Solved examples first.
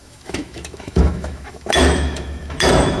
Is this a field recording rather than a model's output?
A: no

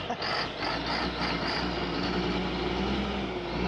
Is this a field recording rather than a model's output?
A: yes